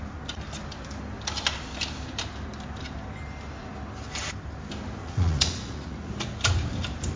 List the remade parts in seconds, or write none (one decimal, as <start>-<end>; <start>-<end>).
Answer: 5.0-6.1